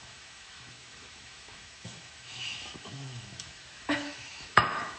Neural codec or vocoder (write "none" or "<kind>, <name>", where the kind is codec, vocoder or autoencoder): autoencoder, DAC-VAE